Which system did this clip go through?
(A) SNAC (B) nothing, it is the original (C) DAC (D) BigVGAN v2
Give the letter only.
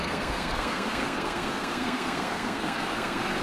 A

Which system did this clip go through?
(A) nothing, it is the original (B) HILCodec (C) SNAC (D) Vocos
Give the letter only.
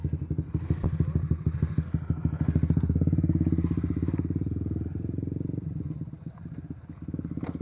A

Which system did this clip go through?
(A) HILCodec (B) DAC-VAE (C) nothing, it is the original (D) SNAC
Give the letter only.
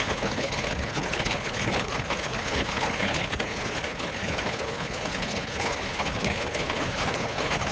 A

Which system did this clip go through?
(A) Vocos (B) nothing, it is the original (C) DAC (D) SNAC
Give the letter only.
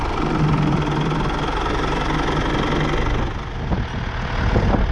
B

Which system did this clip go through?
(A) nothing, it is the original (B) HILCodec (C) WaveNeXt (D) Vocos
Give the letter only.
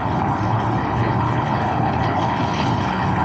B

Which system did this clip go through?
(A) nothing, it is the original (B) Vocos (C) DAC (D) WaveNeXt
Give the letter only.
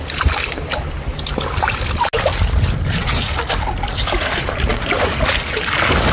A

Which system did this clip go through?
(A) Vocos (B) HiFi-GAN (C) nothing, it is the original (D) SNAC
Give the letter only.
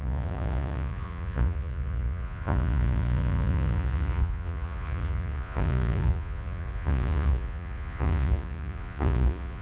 A